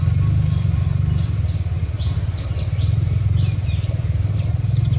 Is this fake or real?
real